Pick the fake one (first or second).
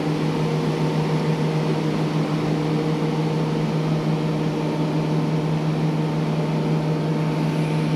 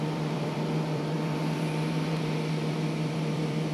second